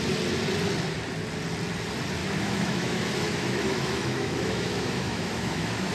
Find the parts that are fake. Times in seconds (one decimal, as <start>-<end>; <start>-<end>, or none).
2.2-5.9